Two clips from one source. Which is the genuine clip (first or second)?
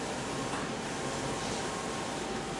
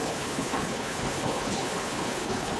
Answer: first